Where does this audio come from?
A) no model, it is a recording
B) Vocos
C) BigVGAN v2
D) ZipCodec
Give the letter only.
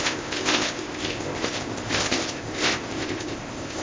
D